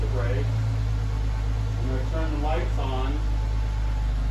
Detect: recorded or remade recorded